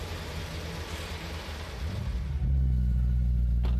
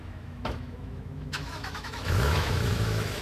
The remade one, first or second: second